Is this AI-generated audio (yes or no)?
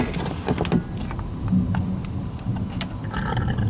no